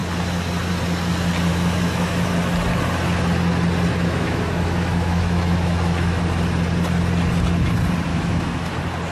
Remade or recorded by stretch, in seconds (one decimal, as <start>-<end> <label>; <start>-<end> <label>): 0.0-1.5 recorded; 1.5-2.3 remade; 2.3-3.9 recorded; 3.9-6.2 remade; 6.2-8.1 recorded; 8.1-8.7 remade; 8.7-9.1 recorded